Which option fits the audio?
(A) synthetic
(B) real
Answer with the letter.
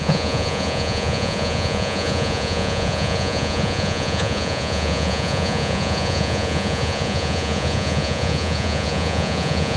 A